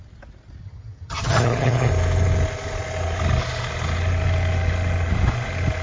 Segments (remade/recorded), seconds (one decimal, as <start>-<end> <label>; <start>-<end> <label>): 0.0-0.6 recorded; 0.6-1.9 remade; 1.9-5.8 recorded